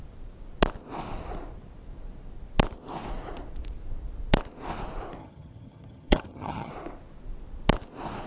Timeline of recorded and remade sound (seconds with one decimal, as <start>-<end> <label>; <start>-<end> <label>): 0.0-5.2 recorded; 5.2-6.7 remade; 6.7-8.3 recorded